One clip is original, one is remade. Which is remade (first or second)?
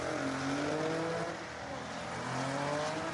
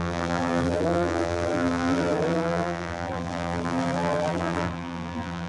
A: second